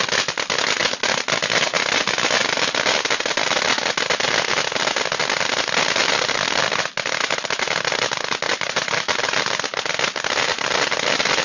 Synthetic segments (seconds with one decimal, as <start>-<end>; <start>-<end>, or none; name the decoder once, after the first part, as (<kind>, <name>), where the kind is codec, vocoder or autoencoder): 8.5-9.1 (vocoder, BigVGAN v2)